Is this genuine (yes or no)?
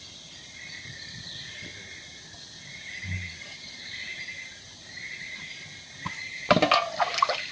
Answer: yes